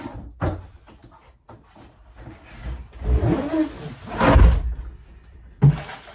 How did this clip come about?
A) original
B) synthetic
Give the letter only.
A